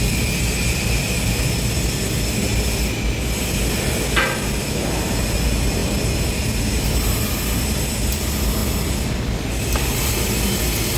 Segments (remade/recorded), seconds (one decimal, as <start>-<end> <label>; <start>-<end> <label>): 0.0-4.6 recorded; 4.6-5.1 remade; 5.1-11.0 recorded